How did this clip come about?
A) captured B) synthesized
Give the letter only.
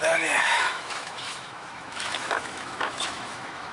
B